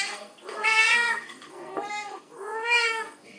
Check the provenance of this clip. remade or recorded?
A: remade